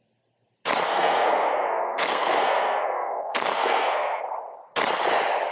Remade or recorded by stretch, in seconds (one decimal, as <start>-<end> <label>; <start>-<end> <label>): 0.0-0.9 recorded; 0.9-4.2 remade; 4.2-5.5 recorded